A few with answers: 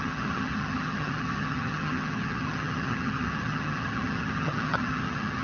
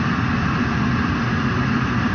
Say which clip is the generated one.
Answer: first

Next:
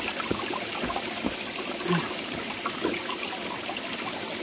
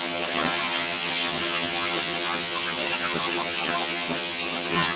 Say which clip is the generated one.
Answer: second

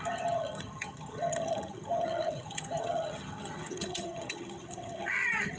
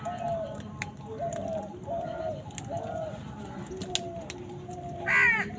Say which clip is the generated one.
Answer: first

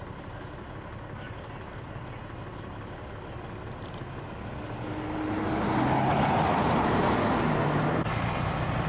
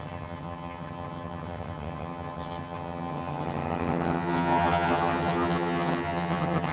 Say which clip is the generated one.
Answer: second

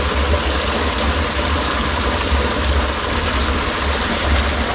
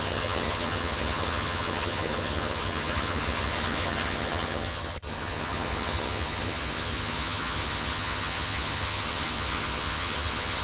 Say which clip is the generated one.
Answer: second